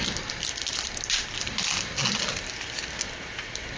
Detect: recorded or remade recorded